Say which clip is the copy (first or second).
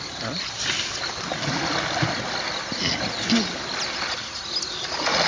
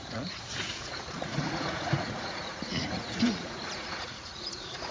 second